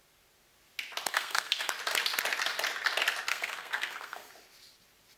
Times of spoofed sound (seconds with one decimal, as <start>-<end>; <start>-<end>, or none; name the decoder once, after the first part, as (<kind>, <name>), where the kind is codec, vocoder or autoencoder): 1.1-1.7 (codec, SNAC); 3.3-4.3